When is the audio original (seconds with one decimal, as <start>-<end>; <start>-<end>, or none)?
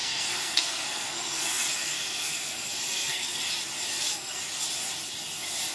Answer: 3.4-3.9; 4.4-5.7